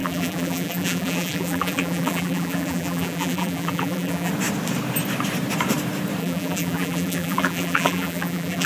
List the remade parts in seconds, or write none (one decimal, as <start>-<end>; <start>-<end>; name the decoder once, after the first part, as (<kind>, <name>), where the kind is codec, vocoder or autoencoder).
0.0-4.3 (vocoder, BigVGAN v2); 6.2-8.7